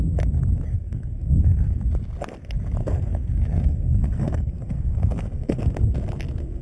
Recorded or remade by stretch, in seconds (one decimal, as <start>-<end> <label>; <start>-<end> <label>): 0.0-0.7 recorded; 0.7-1.8 remade; 1.8-2.8 recorded; 2.8-5.6 remade; 5.6-6.6 recorded